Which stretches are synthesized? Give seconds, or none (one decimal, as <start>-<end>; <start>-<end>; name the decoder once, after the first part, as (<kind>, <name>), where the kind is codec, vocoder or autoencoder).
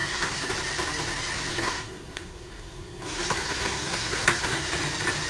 0.0-0.5 (codec, SNAC); 1.5-4.7